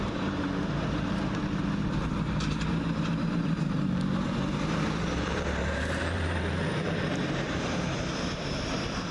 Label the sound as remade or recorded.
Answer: remade